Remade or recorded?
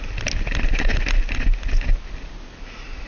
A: recorded